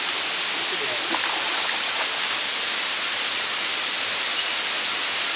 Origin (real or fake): real